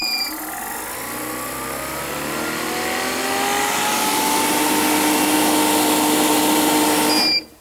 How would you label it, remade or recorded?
recorded